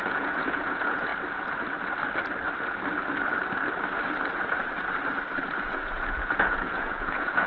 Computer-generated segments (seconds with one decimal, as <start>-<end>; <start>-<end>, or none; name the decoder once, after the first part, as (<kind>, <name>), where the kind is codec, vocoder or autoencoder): 0.0-1.1 (vocoder, Vocos); 5.6-7.5